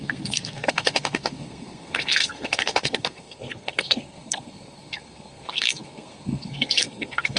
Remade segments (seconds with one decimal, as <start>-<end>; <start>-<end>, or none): 0.0-7.4